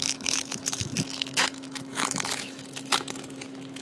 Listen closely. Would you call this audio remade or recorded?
remade